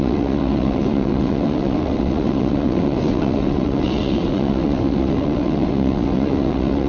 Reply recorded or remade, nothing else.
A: remade